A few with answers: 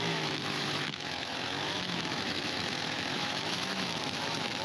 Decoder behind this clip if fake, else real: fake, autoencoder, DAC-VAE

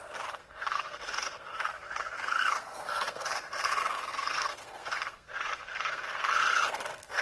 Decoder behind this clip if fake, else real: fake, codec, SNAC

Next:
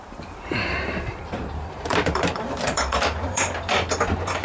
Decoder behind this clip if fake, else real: fake, vocoder, BigVGAN v2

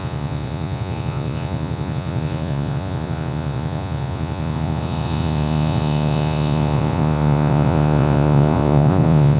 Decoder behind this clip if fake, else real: fake, vocoder, Vocos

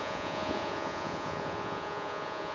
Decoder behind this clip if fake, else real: fake, vocoder, Vocos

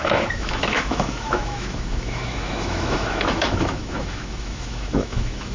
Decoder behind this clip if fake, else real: fake, autoencoder, DAC-VAE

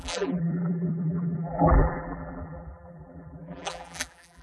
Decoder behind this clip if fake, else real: fake, vocoder, BigVGAN v2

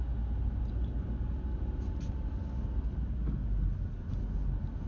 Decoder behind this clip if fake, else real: real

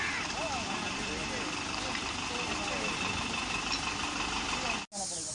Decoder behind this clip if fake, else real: real